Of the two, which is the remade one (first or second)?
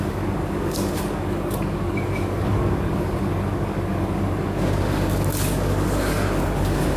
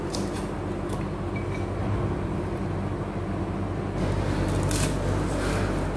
first